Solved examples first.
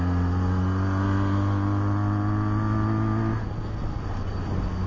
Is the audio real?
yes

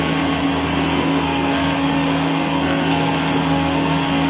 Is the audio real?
no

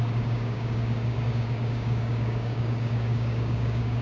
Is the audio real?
no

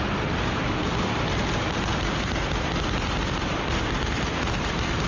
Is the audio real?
no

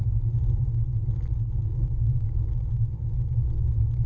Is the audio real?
yes